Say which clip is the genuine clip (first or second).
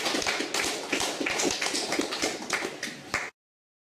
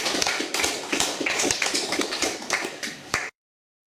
first